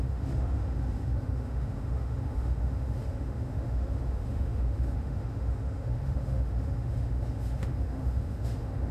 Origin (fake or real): fake